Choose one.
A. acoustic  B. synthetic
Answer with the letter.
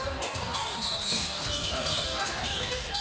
B